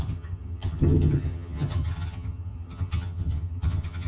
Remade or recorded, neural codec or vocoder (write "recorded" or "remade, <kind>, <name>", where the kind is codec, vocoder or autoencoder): remade, vocoder, HiFi-GAN